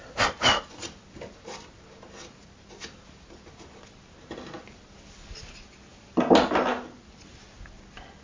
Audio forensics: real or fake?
real